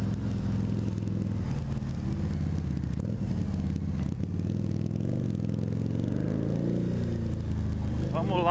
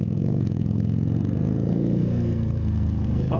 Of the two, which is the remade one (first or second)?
second